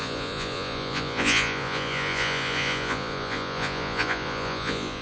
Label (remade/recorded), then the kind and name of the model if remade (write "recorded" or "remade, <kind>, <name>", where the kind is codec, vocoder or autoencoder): remade, vocoder, Vocos